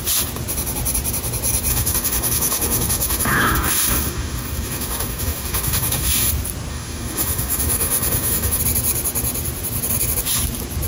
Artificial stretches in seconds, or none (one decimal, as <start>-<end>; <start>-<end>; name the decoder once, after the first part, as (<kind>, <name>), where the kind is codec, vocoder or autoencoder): 1.7-6.3 (codec, DAC); 6.7-8.6